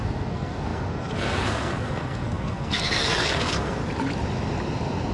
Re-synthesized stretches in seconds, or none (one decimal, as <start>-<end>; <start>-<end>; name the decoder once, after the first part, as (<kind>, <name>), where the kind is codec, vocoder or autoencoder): 0.0-3.8 (codec, SNAC)